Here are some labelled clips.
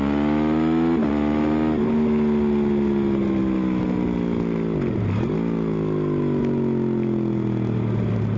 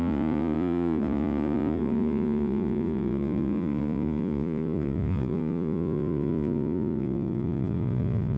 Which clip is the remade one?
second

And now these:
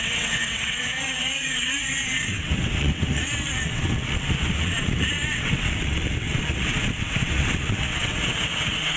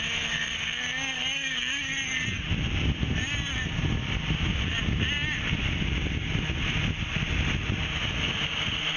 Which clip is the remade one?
first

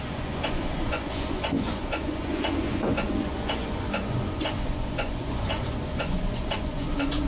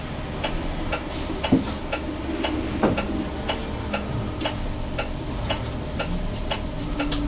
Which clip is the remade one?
first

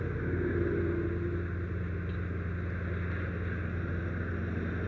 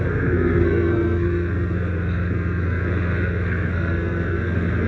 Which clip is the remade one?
second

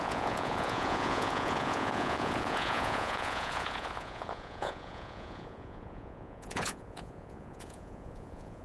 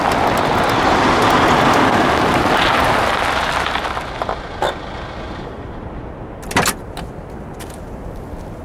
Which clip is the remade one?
first